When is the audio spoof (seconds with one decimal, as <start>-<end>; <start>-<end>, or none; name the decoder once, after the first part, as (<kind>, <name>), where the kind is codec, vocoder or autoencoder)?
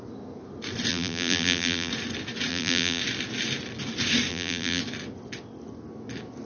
0.9-1.9 (vocoder, BigVGAN v2); 2.5-3.0; 4.3-4.8